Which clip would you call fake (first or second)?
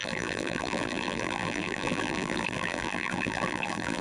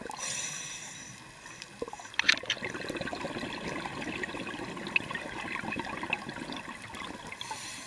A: first